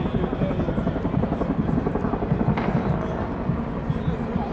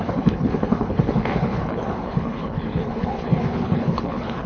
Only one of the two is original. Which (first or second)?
first